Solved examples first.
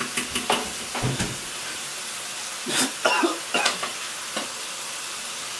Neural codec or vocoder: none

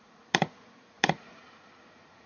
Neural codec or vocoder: vocoder, Vocos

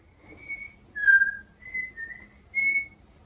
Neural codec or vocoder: none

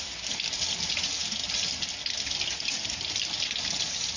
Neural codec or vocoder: none